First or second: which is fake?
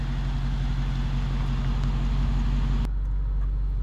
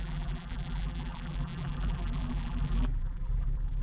second